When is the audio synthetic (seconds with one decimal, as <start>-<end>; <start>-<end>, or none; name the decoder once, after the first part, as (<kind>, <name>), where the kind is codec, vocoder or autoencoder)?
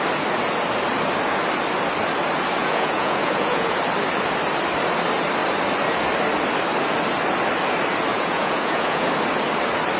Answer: 2.6-3.8 (vocoder, Vocos); 8.1-9.1